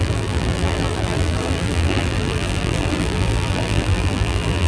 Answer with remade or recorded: remade